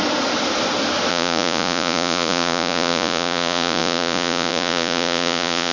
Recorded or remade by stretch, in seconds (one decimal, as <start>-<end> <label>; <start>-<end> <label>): 0.0-1.1 recorded; 1.1-5.7 remade

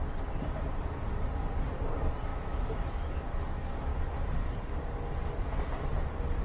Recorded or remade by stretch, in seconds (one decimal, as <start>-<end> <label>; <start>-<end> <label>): 0.0-2.3 recorded; 2.3-3.1 remade; 3.1-6.4 recorded